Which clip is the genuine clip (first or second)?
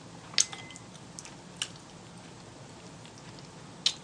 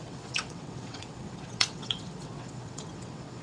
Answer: first